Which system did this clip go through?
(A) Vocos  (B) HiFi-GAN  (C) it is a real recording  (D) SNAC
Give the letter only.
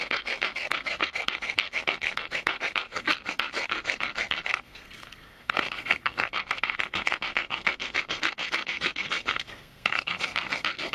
D